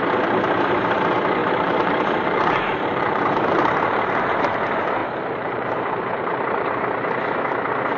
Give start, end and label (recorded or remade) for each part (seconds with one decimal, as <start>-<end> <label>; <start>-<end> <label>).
0.0-1.4 recorded; 1.4-4.2 remade; 4.2-5.0 recorded; 5.0-6.7 remade; 6.7-8.0 recorded